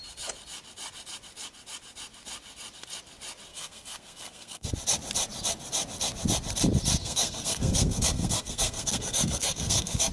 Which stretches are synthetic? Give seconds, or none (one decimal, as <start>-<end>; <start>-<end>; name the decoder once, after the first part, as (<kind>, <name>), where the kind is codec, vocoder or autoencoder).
3.5-4.7 (codec, SNAC); 7.0-10.1